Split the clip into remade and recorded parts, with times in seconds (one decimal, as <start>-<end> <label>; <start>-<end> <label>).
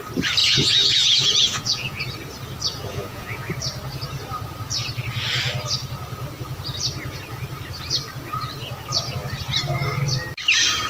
0.0-0.4 recorded; 0.4-2.0 remade; 2.0-2.9 recorded; 2.9-3.5 remade; 3.5-10.9 recorded